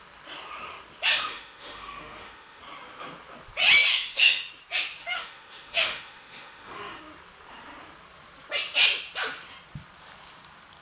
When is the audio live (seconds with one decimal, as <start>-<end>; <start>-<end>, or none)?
0.0-1.1; 2.6-3.9; 4.5-5.0; 7.0-10.8